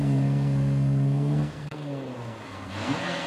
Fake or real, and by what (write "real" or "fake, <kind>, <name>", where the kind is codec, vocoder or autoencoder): fake, codec, SNAC